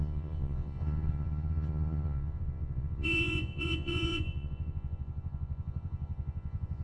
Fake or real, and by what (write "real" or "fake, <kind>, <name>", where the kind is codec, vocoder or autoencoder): fake, vocoder, Vocos